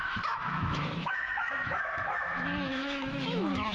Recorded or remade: remade